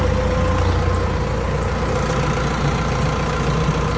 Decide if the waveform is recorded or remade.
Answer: recorded